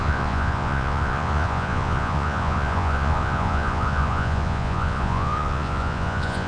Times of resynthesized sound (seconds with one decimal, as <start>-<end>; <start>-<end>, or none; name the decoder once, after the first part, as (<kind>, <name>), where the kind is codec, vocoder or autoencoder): 0.0-6.5 (vocoder, Vocos)